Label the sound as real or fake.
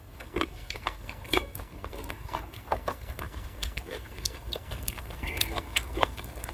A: fake